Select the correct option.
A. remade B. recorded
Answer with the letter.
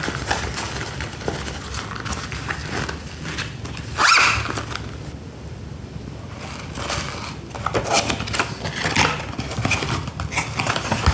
B